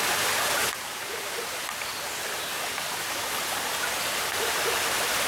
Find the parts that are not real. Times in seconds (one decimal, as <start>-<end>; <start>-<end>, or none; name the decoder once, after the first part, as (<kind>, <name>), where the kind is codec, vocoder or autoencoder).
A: none